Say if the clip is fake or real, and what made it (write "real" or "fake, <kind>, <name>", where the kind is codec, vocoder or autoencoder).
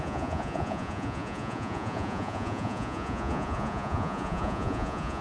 fake, vocoder, Vocos